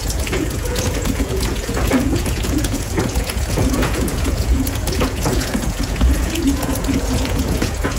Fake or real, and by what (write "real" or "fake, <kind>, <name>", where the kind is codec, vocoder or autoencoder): fake, vocoder, Vocos